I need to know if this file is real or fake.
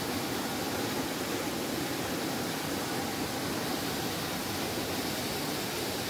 real